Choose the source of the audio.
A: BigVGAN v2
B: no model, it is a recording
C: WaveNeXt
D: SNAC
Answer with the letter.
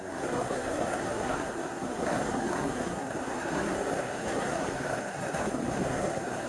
D